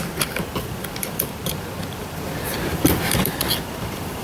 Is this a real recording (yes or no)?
no